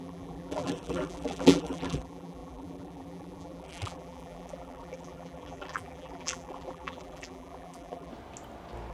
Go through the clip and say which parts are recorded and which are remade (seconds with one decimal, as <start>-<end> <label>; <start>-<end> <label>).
0.0-8.1 remade; 8.1-8.9 recorded